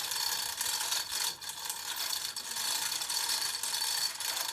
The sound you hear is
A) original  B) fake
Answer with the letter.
A